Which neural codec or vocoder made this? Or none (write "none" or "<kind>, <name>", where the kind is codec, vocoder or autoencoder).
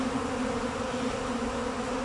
none